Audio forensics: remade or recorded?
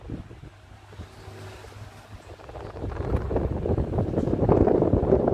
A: recorded